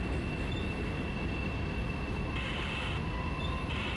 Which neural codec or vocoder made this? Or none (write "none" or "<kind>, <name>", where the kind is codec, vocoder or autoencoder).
none